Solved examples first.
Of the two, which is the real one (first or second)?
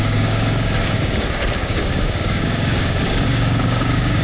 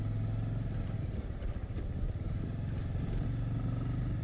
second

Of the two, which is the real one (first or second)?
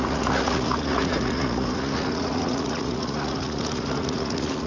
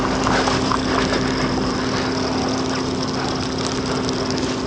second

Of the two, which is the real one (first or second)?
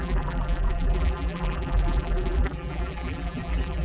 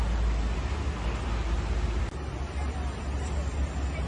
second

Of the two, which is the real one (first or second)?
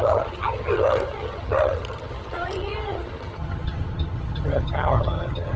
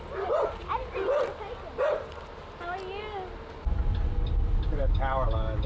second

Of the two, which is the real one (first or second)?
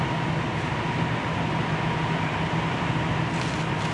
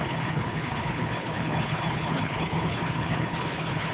first